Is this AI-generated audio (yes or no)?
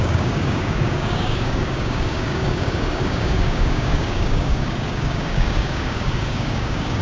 yes